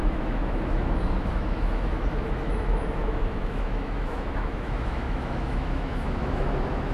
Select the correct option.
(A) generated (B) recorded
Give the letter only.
A